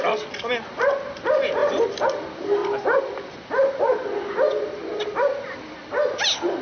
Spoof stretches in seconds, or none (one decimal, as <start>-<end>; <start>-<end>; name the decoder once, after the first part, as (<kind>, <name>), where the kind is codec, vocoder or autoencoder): 1.6-2.2 (vocoder, BigVGAN v2)